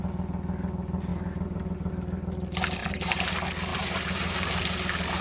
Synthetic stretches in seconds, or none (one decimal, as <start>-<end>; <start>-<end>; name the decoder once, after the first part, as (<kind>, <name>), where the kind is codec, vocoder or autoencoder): 1.1-1.9 (vocoder, BigVGAN v2); 2.8-3.3; 3.7-5.2